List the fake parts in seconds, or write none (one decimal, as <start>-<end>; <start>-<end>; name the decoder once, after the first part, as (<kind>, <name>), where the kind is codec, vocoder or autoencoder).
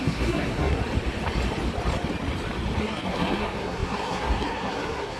0.0-0.8 (codec, SNAC); 2.8-5.2